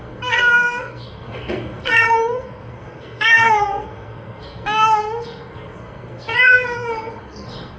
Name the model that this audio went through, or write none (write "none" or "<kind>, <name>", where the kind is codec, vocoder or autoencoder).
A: codec, SNAC